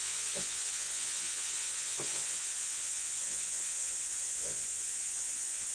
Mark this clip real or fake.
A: fake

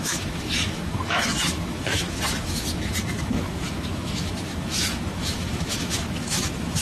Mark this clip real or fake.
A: fake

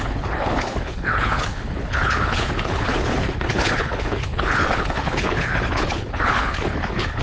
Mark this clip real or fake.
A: fake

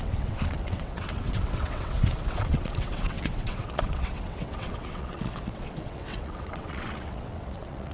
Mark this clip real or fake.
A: fake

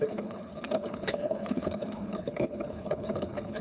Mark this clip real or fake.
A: fake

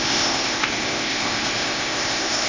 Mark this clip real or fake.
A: fake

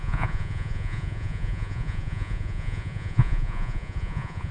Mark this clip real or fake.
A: fake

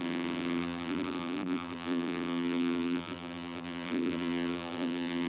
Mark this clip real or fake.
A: fake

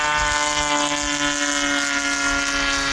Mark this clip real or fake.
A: real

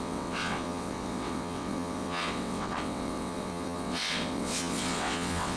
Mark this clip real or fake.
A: fake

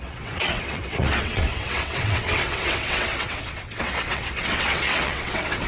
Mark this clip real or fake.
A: fake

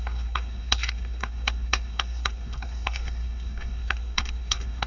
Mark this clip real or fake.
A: fake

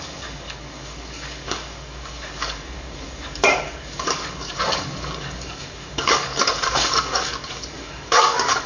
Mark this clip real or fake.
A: fake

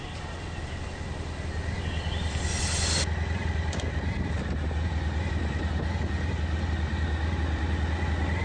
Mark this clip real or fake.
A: real